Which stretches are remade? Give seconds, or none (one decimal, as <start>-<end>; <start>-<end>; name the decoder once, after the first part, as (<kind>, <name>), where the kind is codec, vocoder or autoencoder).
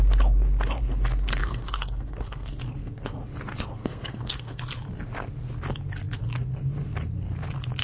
1.4-2.6 (codec, SNAC); 3.8-4.6